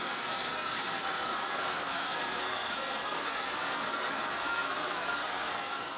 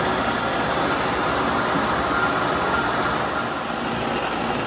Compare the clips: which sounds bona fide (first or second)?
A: second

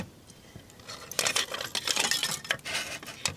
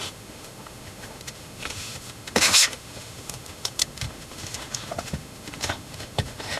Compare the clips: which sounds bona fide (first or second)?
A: first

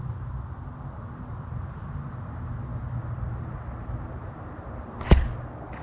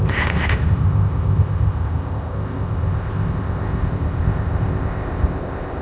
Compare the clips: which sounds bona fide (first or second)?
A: first